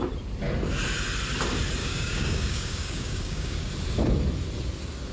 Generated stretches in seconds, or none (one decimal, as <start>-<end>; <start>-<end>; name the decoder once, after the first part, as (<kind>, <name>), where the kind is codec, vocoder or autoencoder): 1.8-3.7 (codec, DAC)